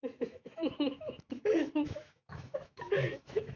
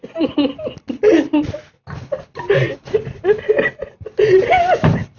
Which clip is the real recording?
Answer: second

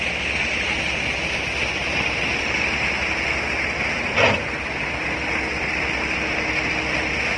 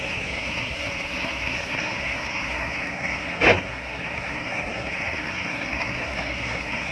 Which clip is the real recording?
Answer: first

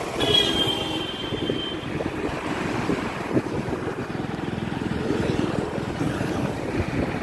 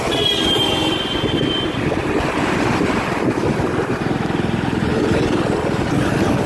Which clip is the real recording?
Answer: second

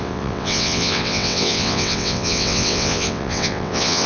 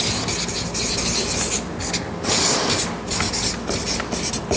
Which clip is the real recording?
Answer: second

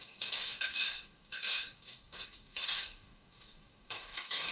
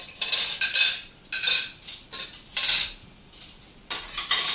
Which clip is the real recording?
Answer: second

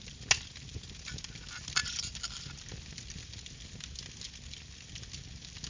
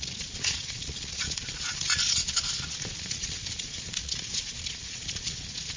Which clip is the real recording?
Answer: first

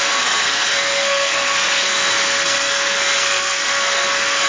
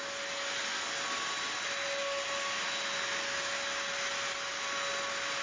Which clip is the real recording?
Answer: second